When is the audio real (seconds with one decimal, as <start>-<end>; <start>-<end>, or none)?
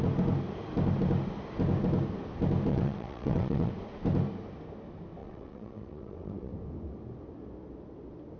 0.0-2.7; 3.7-5.2; 6.5-8.4